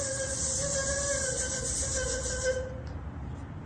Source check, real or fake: real